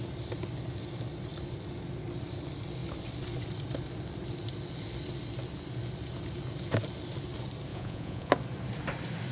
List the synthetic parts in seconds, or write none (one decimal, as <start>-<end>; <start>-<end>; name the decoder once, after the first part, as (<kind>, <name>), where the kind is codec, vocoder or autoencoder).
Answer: 7.7-8.3 (vocoder, Vocos)